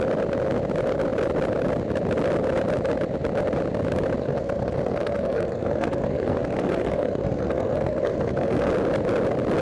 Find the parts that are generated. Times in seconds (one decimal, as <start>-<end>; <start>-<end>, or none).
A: 4.2-8.7